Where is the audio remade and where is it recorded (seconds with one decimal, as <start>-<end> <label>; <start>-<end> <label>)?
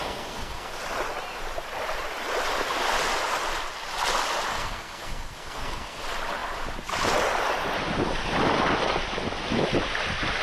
0.0-0.7 remade; 0.7-4.5 recorded; 4.5-6.0 remade; 6.0-10.4 recorded